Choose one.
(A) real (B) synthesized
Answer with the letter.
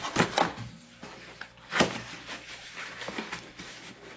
A